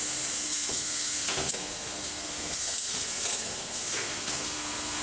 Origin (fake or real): fake